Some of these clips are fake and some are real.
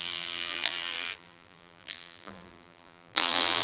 fake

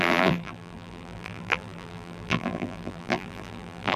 fake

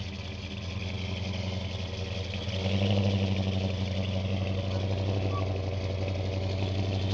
real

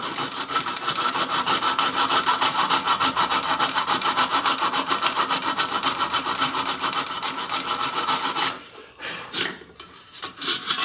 fake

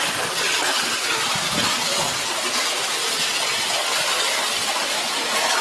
real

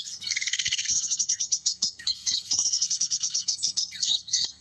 fake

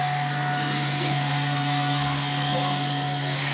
fake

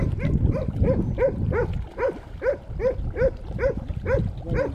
real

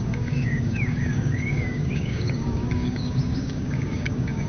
fake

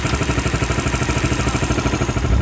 real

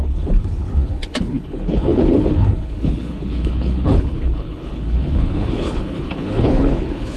fake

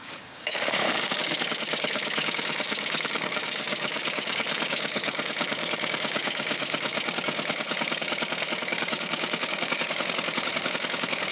fake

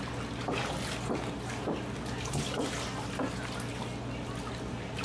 real